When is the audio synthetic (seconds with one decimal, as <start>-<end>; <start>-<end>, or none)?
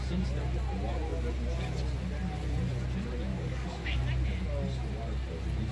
3.3-4.0